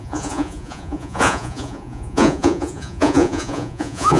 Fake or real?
fake